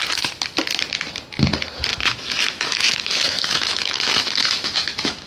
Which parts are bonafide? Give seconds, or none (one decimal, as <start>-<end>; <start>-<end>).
0.0-1.9